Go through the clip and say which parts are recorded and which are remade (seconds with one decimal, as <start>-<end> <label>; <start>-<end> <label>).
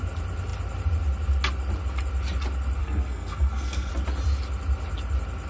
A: 0.0-2.8 recorded; 2.8-3.9 remade; 3.9-5.5 recorded